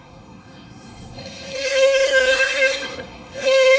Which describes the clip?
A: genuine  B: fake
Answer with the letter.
B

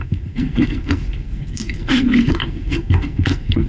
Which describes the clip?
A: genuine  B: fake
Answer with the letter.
B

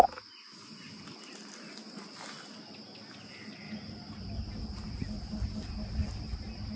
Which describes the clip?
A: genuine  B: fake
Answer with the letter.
A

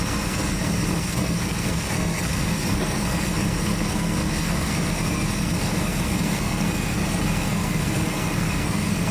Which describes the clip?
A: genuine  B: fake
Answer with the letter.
B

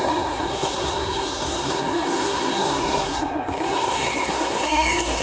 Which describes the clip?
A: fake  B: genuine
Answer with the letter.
A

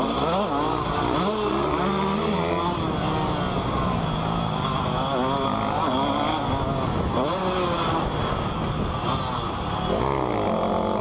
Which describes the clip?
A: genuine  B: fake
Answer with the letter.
A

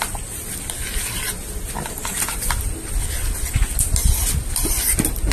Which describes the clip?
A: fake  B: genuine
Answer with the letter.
B